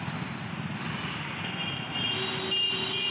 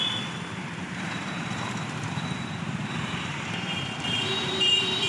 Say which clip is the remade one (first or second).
second